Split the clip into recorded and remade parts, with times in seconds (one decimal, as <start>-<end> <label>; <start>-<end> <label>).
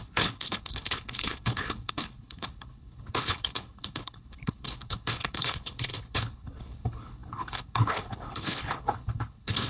0.0-9.7 remade